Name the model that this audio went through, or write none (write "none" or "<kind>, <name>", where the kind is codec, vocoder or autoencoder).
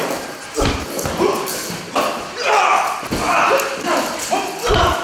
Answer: none